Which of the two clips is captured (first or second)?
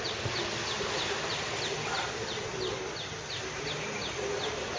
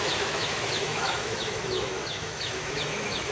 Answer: first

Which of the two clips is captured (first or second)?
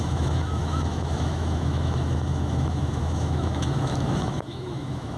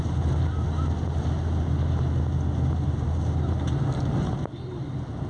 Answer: second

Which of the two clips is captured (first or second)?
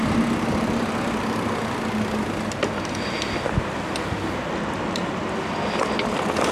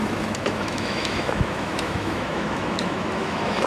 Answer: first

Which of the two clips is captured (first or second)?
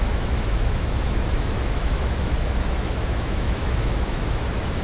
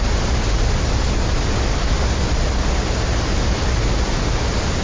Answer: second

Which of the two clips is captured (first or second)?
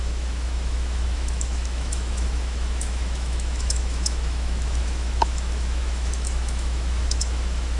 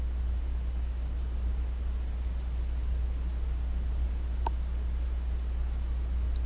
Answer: second